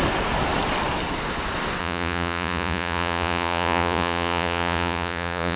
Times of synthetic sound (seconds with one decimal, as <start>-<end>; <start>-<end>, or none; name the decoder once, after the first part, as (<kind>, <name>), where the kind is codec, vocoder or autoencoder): 1.8-5.6 (vocoder, Vocos)